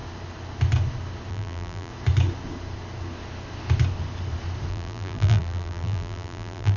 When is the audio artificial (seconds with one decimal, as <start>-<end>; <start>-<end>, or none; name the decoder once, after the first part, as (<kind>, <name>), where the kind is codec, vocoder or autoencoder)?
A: 1.3-1.9 (vocoder, BigVGAN v2); 4.7-6.8